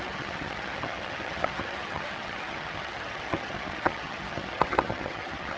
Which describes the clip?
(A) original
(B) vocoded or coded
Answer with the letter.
B